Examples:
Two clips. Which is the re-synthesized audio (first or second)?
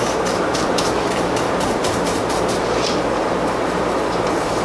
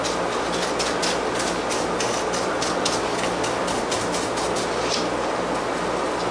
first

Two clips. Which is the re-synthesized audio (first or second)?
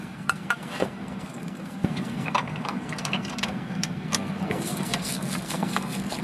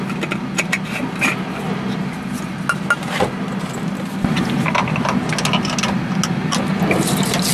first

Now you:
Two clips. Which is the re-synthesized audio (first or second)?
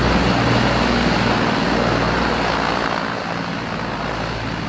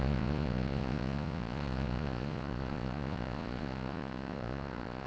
second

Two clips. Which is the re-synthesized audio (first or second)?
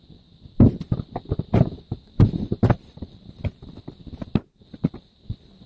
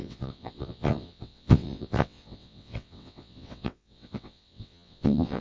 second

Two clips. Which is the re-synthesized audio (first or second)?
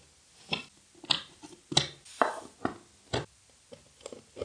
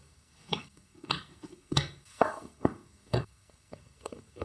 second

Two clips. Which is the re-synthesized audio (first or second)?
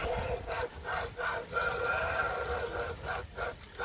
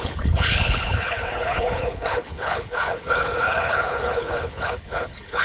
second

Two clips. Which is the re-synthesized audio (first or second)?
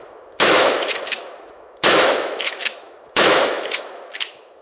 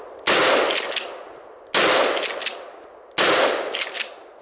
first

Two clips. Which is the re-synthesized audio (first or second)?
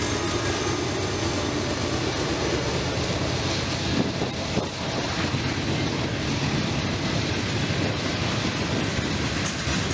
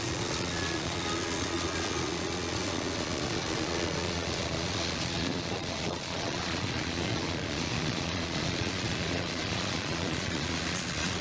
second